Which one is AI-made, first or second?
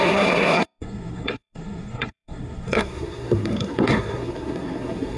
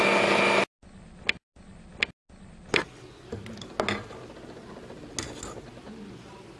first